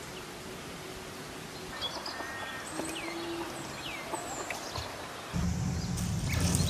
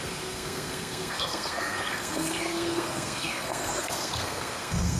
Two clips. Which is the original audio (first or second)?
first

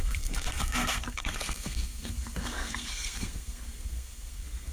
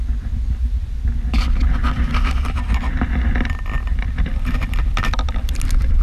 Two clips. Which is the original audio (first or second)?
second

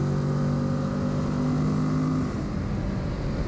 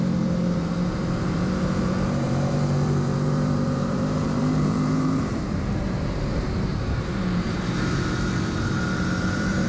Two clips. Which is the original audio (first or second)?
first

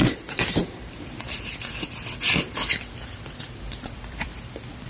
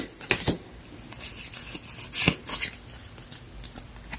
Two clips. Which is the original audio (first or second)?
second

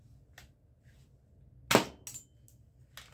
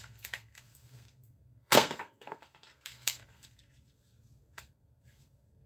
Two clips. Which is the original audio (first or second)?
first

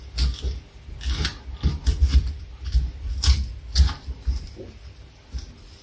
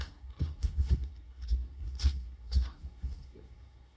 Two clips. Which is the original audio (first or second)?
first